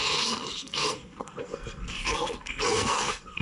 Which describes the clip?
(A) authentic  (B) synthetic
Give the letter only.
B